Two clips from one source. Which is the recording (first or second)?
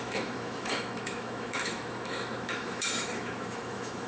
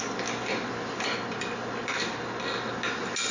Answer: second